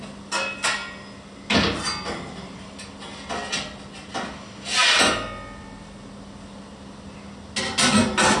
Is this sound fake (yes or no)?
no